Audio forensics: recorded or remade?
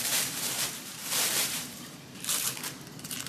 remade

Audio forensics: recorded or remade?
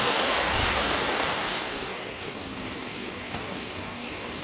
remade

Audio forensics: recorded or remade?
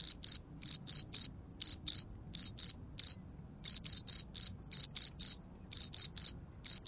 recorded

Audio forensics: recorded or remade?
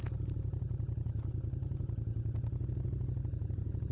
recorded